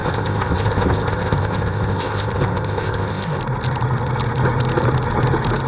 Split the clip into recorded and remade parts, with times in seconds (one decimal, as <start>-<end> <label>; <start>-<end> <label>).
0.0-3.4 remade; 3.4-5.7 recorded